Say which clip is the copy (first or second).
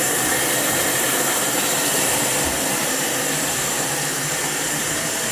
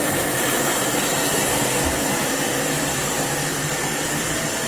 first